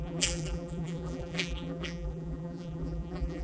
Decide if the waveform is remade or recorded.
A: remade